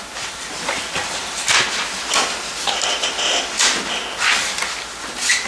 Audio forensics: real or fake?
real